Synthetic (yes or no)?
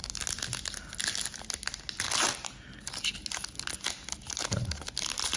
no